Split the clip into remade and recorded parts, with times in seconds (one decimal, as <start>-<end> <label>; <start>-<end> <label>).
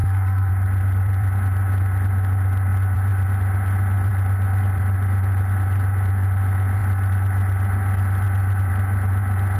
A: 0.0-0.5 remade; 0.5-9.6 recorded